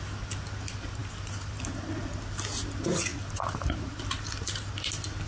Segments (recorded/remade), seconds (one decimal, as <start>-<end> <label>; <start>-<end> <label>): 0.0-1.0 recorded; 1.0-1.8 remade; 1.8-3.1 recorded; 3.1-4.0 remade; 4.0-5.3 recorded